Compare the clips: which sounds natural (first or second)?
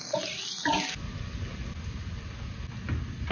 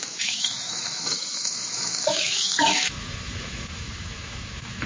first